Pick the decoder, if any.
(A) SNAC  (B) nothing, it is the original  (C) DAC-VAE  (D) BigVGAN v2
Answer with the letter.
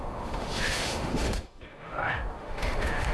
C